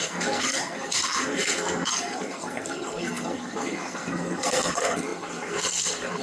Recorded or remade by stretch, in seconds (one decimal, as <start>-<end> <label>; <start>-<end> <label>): 0.0-6.2 remade